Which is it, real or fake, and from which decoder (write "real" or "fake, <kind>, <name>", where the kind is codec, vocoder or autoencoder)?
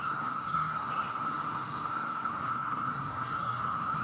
fake, codec, SNAC